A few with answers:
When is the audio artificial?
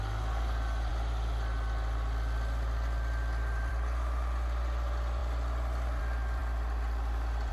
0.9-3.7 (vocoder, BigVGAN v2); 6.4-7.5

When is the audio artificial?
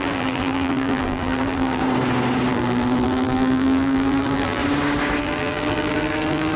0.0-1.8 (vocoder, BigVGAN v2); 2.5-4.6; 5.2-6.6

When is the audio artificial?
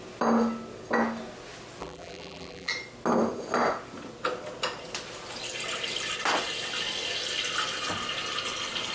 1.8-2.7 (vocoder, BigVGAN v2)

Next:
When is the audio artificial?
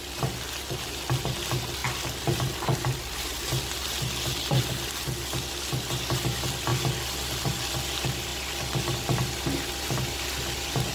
none